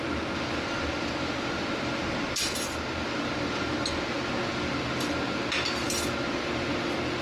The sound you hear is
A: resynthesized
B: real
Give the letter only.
B